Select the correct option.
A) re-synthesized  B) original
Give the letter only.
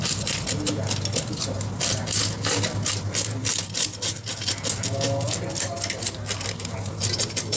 B